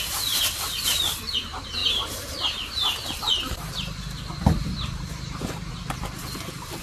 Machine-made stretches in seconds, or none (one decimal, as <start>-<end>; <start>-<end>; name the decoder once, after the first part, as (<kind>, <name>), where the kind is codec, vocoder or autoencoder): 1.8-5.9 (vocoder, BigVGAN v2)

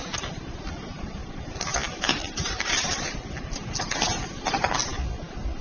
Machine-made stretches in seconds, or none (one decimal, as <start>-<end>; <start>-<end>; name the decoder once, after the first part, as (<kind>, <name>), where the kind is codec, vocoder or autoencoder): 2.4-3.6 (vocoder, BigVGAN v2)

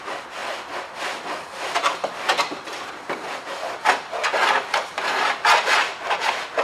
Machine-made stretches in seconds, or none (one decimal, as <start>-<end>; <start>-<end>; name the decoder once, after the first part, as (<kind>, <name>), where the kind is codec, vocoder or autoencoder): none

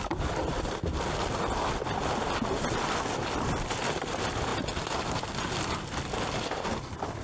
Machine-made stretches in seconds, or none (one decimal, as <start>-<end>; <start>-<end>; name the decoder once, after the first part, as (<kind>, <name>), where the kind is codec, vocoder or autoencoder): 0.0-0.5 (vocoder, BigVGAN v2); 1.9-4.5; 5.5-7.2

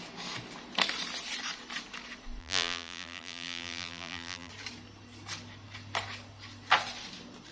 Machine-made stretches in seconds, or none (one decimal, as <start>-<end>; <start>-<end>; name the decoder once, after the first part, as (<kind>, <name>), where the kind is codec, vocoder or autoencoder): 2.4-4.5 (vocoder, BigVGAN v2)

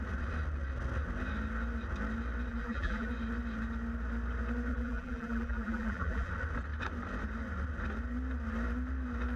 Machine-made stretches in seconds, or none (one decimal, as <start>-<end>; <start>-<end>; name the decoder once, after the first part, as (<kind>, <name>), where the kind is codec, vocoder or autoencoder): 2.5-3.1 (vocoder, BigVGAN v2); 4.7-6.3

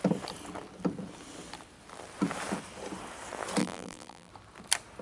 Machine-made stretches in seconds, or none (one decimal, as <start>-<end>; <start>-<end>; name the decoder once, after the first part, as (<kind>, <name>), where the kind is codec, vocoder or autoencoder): 3.6-4.3 (vocoder, BigVGAN v2)

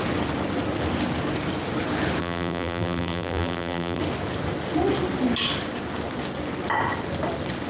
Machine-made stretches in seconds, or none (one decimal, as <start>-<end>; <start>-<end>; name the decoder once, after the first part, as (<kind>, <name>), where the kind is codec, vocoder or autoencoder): 2.2-4.0 (vocoder, BigVGAN v2)